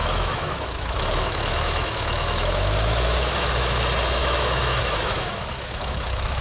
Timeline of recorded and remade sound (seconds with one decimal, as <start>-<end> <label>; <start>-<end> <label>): 0.0-3.8 remade; 3.8-4.2 recorded; 4.2-6.4 remade